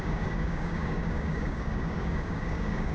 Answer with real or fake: fake